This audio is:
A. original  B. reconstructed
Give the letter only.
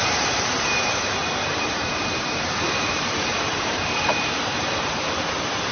B